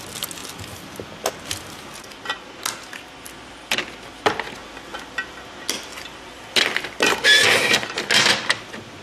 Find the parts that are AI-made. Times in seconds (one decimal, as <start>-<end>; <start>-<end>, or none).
none